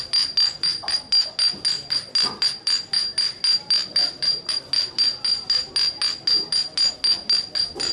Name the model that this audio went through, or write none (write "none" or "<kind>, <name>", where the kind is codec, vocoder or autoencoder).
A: none